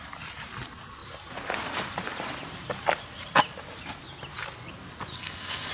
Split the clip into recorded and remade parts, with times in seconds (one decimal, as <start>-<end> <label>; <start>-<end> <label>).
0.0-5.1 recorded; 5.1-5.7 remade